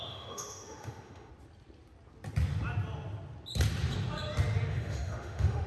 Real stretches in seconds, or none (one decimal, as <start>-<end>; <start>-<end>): 1.3-4.7